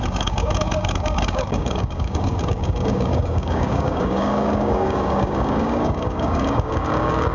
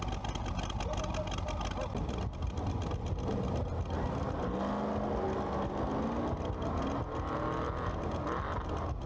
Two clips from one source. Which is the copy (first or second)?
first